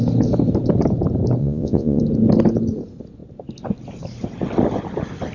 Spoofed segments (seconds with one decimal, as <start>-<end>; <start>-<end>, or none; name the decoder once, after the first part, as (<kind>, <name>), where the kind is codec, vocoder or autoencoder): 1.4-2.0 (vocoder, Vocos)